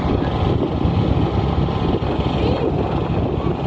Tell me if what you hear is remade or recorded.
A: recorded